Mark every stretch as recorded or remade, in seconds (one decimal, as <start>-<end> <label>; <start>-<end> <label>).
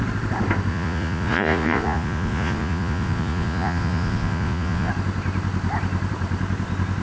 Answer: 0.0-0.7 recorded; 0.7-4.9 remade; 4.9-7.0 recorded